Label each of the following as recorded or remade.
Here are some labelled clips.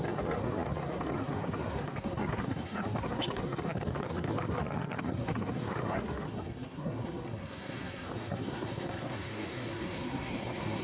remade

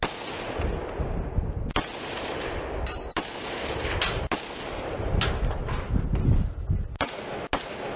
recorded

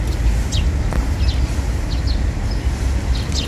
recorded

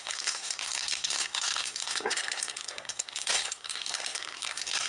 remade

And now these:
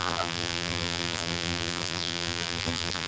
remade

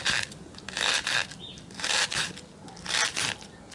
recorded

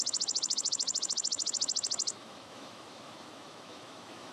remade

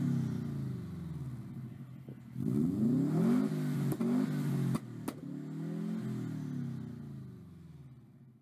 recorded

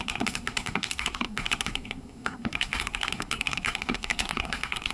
remade